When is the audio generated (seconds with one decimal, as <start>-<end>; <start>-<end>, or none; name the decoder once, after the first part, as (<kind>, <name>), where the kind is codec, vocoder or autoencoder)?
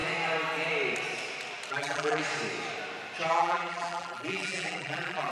1.7-2.2 (vocoder, BigVGAN v2); 3.3-5.3